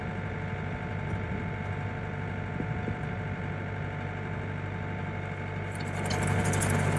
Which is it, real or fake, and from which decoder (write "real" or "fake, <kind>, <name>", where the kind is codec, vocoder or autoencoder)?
real